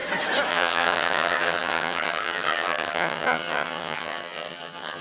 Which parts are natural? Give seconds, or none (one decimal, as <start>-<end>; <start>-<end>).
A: 0.0-0.5

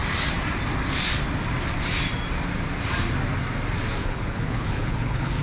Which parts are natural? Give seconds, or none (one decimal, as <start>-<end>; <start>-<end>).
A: 0.0-4.0

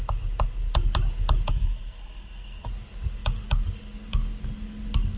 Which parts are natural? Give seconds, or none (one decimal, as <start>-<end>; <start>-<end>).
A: 0.0-1.5; 2.7-5.2

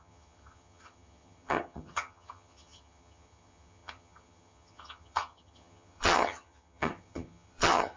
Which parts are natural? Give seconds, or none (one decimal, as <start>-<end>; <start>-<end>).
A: none

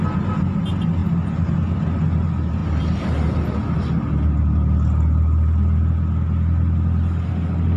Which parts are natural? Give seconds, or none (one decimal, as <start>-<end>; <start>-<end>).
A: 0.0-7.8

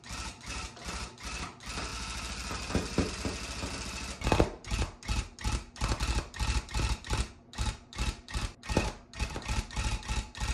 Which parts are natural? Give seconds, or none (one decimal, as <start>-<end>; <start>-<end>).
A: 0.0-10.5

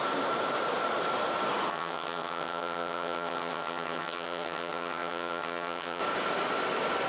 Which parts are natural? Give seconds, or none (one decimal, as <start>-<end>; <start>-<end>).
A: 0.0-1.7; 6.0-7.1